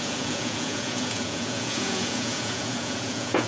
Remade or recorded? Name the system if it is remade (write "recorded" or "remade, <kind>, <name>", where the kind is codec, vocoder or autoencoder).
remade, vocoder, Vocos